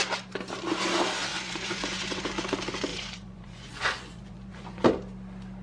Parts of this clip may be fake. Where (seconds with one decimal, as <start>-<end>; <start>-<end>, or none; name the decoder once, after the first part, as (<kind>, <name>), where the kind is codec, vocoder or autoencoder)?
1.3-2.3 (vocoder, Vocos); 2.9-4.8